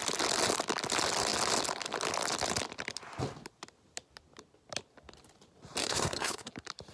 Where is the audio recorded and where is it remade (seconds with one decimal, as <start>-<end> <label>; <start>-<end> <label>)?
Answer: 0.0-5.8 recorded; 5.8-6.5 remade; 6.5-6.9 recorded